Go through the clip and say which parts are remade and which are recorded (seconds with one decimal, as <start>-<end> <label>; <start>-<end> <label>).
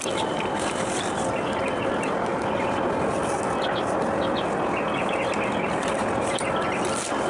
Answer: 0.0-7.3 recorded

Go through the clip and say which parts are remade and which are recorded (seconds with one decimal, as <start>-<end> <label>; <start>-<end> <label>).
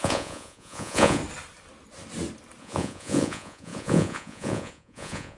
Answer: 0.0-1.2 remade; 1.2-2.6 recorded; 2.6-5.4 remade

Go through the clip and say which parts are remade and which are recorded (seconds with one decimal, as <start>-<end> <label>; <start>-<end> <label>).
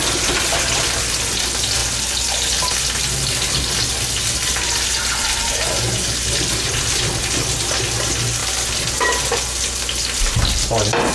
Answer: 0.0-11.1 recorded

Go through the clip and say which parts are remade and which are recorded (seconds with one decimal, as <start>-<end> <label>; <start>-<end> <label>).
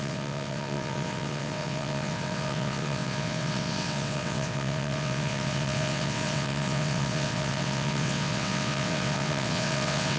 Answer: 0.0-10.2 remade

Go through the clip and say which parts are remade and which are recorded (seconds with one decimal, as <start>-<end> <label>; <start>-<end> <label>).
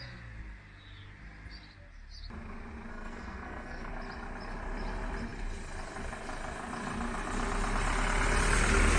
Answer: 0.0-2.9 recorded; 2.9-3.9 remade; 3.9-9.0 recorded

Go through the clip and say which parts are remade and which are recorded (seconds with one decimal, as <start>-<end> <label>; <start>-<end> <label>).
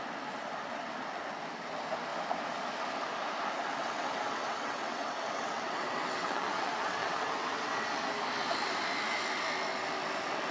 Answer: 0.0-3.8 recorded; 3.8-8.1 remade; 8.1-10.5 recorded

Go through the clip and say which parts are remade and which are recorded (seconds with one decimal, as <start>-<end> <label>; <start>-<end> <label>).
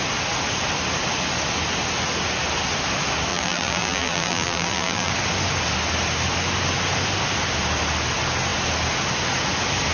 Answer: 0.0-3.3 recorded; 3.3-5.1 remade; 5.1-9.9 recorded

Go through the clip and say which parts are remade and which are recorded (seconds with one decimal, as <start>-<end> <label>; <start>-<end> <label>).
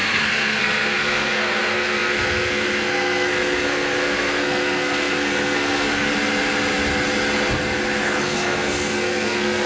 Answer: 0.0-6.1 remade; 6.1-8.2 recorded; 8.2-9.7 remade